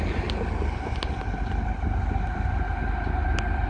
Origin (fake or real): real